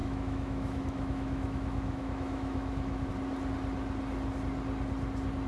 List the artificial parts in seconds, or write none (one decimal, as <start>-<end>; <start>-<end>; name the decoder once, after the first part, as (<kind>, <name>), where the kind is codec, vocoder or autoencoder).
0.0-3.1 (autoencoder, DAC-VAE)